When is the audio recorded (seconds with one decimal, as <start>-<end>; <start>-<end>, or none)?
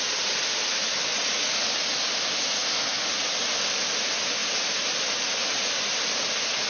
0.0-1.1; 1.7-6.7